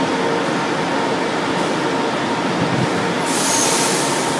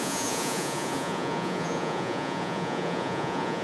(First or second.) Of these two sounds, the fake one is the second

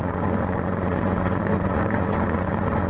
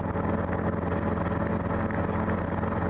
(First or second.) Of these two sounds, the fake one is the first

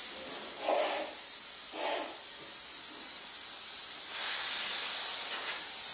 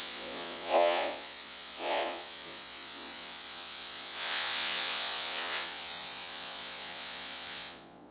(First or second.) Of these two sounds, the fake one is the second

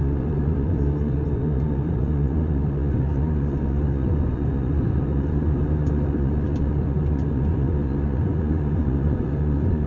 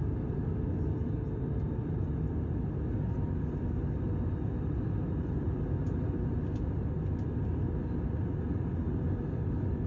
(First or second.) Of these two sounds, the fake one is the first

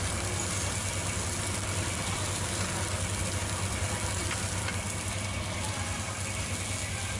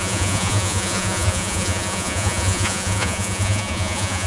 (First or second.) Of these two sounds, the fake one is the second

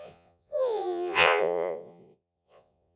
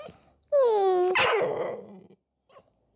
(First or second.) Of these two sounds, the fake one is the first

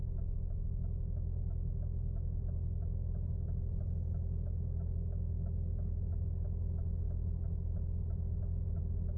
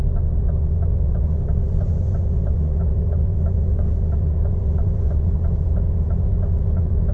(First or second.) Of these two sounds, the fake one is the second